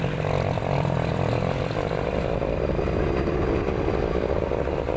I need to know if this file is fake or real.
real